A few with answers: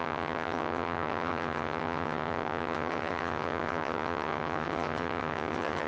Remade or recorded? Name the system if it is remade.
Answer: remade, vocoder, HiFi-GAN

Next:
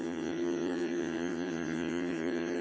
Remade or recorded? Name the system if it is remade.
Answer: remade, vocoder, HiFi-GAN